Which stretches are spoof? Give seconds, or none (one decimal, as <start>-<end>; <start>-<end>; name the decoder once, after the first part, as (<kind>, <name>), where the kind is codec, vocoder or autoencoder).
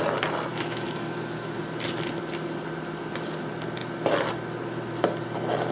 0.5-1.6 (autoencoder, DAC-VAE)